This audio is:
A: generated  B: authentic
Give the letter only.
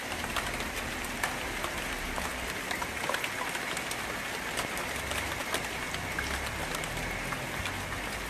B